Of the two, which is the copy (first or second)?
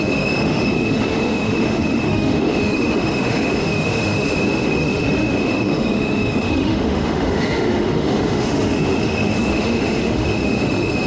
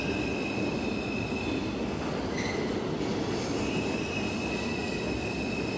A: first